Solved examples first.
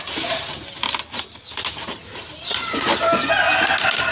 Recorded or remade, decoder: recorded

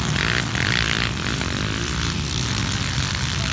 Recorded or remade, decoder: recorded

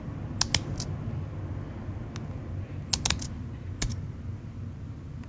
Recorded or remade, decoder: recorded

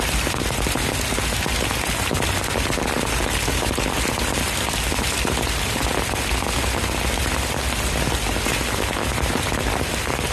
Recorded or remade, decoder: recorded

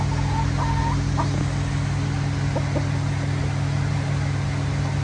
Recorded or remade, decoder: recorded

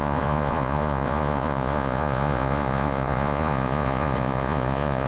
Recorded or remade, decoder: remade, vocoder, Vocos